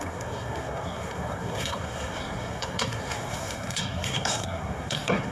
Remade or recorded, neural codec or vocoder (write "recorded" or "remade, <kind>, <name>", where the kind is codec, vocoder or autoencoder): remade, codec, SNAC